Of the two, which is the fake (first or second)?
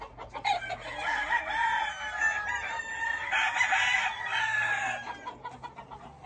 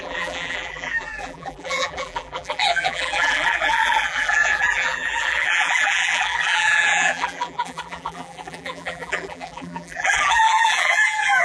second